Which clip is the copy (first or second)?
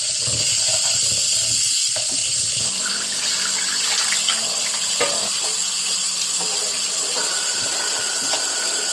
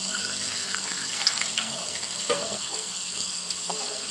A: second